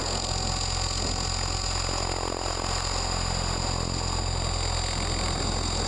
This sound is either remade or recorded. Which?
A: recorded